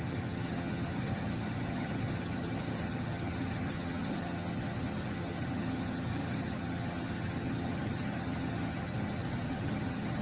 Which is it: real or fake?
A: fake